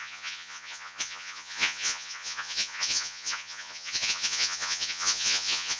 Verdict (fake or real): fake